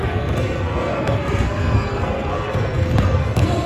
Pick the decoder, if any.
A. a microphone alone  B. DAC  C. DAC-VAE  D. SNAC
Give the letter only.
D